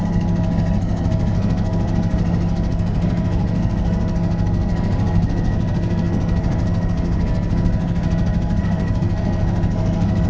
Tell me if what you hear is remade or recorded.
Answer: remade